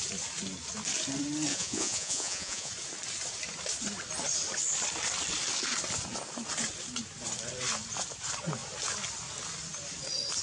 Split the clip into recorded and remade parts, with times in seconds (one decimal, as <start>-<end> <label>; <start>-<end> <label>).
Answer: 0.0-1.5 recorded; 1.5-2.7 remade; 2.7-10.4 recorded